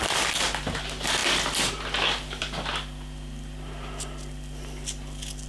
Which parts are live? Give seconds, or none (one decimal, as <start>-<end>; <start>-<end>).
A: 0.0-5.5